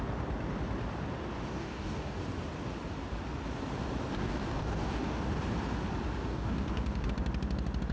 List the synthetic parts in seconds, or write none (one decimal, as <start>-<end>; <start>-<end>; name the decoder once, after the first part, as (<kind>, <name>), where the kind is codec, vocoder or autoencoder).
1.5-2.2 (codec, DAC); 4.1-5.4; 6.3-7.1